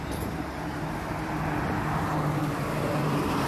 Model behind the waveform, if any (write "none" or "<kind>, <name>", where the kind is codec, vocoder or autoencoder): none